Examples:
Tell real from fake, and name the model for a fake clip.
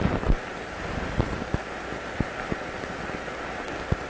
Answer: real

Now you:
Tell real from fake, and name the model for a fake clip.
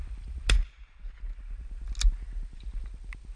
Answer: real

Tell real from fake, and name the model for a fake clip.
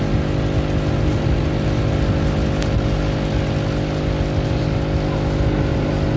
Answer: real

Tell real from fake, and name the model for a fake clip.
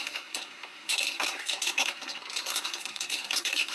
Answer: fake, codec, SNAC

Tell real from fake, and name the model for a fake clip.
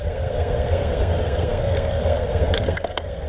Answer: fake, codec, SNAC